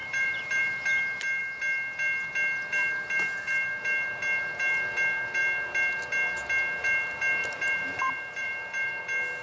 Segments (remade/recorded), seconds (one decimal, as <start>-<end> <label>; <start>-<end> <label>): 0.0-0.7 remade; 0.7-7.4 recorded; 7.4-9.0 remade; 9.0-9.4 recorded